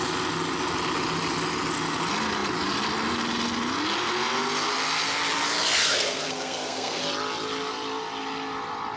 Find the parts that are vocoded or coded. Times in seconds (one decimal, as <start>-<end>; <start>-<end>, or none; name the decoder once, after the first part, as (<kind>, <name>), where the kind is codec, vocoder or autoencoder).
5.8-7.0 (codec, SNAC)